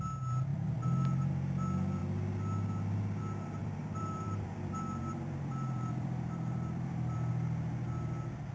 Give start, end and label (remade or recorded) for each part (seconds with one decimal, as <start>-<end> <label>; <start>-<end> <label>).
0.0-0.5 recorded; 0.5-1.3 remade; 1.3-3.6 recorded; 3.6-7.3 remade; 7.3-8.5 recorded